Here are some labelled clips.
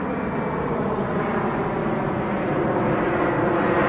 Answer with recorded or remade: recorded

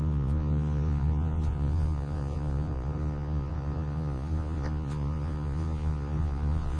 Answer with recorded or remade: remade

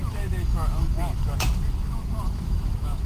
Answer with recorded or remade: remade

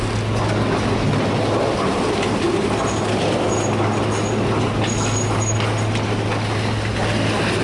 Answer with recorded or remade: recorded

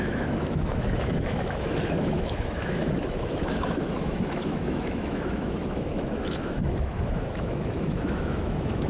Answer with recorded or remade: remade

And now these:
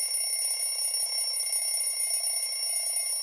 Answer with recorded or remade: recorded